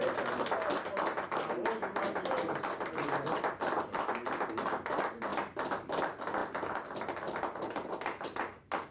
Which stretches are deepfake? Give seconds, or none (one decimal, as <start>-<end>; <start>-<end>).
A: none